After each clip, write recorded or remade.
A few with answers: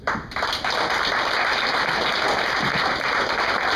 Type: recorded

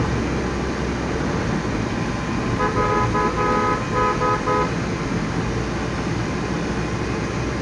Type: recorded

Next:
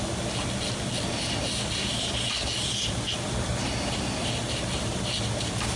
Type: recorded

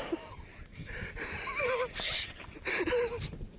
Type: remade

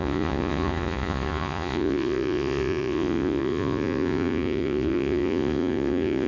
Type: remade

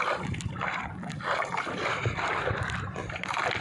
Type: recorded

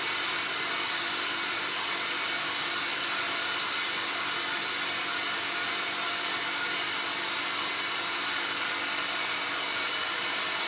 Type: recorded